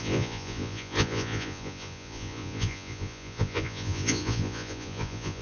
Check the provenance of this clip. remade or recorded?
remade